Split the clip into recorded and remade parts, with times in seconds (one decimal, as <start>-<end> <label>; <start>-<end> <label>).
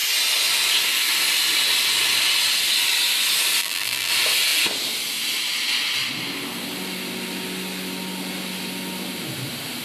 0.0-3.6 recorded; 3.6-4.1 remade; 4.1-9.8 recorded